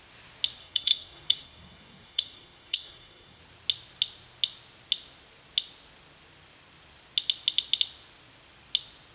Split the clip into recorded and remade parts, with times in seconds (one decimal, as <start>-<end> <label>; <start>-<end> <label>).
0.0-0.6 recorded; 0.6-3.4 remade; 3.4-9.1 recorded